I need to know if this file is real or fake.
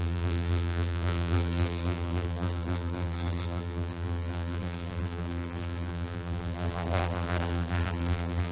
fake